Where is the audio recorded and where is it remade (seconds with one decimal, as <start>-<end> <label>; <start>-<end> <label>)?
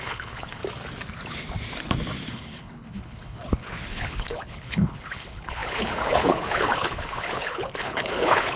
0.0-0.6 remade; 0.6-2.3 recorded; 2.3-8.6 remade